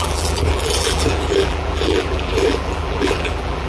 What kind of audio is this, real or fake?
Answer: fake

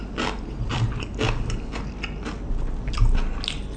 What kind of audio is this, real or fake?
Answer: real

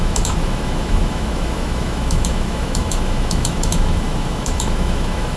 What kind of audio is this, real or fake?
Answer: fake